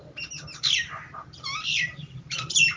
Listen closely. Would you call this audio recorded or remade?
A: recorded